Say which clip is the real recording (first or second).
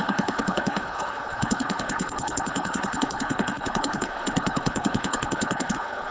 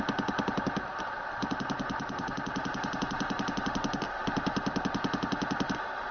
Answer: second